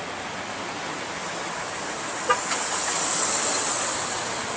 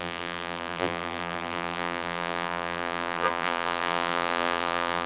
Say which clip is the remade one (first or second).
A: second